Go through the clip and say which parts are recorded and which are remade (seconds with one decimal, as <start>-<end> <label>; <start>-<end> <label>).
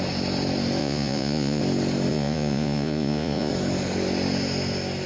0.0-0.8 recorded; 0.8-1.6 remade; 1.6-2.1 recorded; 2.1-3.5 remade; 3.5-5.1 recorded